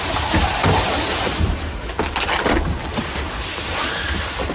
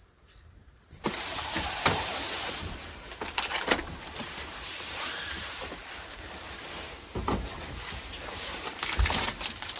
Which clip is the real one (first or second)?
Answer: first